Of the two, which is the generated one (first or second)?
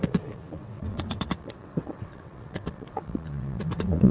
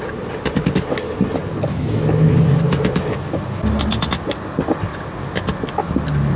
first